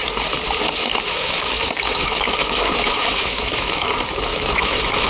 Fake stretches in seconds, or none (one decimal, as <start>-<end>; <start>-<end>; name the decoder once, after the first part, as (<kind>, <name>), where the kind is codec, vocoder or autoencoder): 0.9-3.9 (autoencoder, DAC-VAE); 4.3-5.1

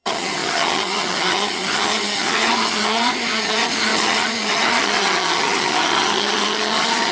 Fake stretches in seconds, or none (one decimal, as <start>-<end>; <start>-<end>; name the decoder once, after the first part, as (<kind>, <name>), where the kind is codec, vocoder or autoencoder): 0.0-7.1 (vocoder, HiFi-GAN)

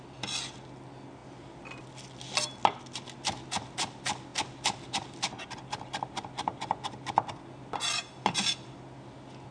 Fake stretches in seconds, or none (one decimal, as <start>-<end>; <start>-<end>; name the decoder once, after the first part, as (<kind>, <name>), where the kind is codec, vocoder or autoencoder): none

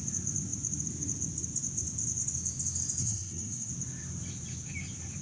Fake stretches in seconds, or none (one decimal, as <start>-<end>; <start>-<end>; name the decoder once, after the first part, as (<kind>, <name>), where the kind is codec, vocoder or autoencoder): 3.0-3.7 (codec, SNAC)

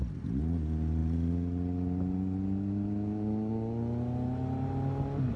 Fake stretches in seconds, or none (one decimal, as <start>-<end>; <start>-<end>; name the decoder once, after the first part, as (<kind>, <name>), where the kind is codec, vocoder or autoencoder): none

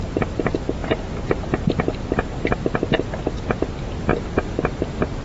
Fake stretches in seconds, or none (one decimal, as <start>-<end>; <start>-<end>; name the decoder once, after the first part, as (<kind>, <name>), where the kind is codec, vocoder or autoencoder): 4.1-5.2 (vocoder, BigVGAN v2)

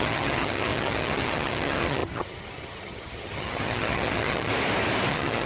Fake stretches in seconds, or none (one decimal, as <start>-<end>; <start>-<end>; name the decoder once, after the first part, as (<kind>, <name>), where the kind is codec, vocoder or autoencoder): 0.0-4.5 (vocoder, HiFi-GAN); 5.1-5.5